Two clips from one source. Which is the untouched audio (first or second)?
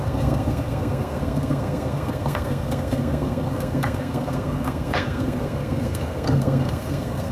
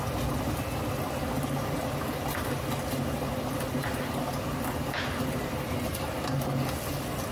second